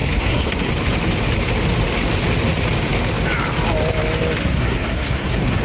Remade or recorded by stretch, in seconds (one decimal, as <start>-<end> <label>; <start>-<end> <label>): 0.0-0.7 remade; 0.7-4.4 recorded; 4.4-5.6 remade